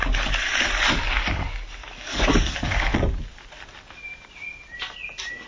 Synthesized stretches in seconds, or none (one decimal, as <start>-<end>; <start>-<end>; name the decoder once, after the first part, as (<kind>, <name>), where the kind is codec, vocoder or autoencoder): 0.0-2.9 (codec, DAC)